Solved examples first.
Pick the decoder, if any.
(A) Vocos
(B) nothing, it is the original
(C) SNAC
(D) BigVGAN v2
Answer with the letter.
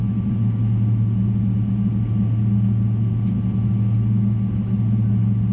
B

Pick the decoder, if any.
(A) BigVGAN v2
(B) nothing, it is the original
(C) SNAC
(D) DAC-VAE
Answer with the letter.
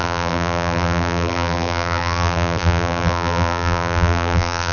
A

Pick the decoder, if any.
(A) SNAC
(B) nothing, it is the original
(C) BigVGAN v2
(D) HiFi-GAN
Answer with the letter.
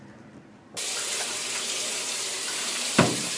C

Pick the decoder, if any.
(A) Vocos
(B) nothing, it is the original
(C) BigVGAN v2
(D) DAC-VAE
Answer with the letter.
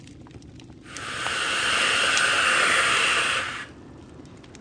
B